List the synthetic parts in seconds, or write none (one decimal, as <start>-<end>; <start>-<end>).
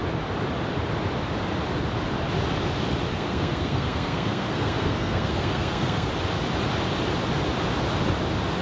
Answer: 3.1-6.1